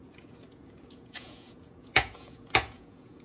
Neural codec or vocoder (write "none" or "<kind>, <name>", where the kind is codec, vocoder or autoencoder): vocoder, Vocos